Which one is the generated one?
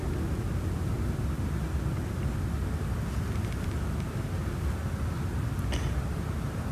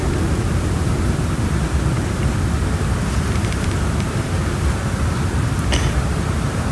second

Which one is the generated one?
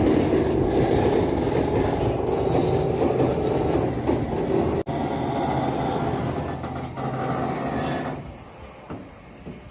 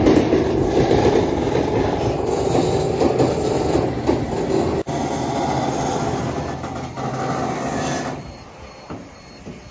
second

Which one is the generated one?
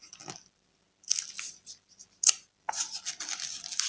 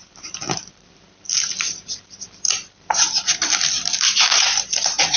second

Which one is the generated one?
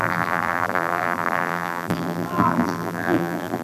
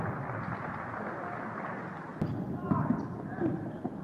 first